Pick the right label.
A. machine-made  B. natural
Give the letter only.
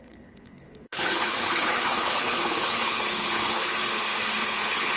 A